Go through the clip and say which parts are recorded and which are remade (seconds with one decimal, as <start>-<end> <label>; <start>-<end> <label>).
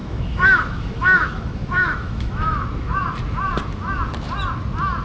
0.0-3.0 remade; 3.0-5.0 recorded